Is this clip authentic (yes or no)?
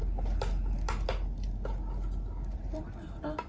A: yes